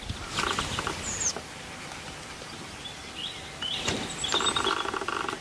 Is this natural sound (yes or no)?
yes